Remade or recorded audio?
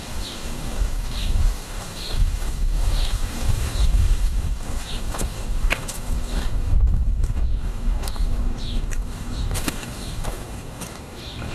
remade